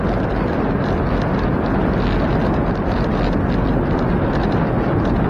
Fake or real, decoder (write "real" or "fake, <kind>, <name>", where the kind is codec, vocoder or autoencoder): real